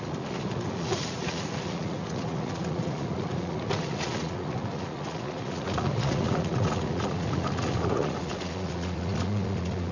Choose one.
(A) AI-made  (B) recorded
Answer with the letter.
A